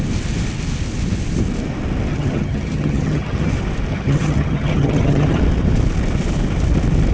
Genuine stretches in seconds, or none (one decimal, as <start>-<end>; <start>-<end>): 0.0-2.1; 3.5-3.9; 5.4-7.1

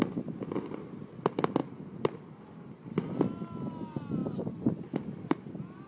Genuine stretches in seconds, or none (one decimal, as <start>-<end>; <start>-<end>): 0.0-1.6; 2.4-4.2; 5.5-5.9

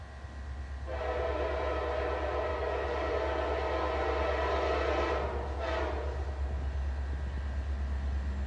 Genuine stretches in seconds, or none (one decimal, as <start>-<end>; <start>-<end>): 0.0-2.5; 3.1-8.5

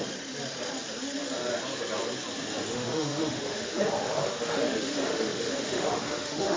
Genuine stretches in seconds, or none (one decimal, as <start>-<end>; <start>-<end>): 0.0-2.7

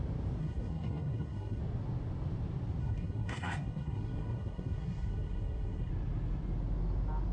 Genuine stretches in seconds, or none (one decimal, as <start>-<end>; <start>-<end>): 0.0-0.4; 1.6-2.8; 5.9-7.3

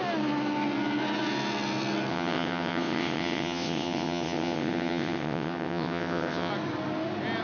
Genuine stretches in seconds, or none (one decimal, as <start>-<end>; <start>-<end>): 0.0-2.1; 6.5-7.4

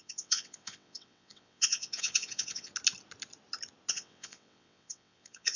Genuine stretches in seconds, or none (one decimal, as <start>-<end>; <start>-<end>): 2.7-3.9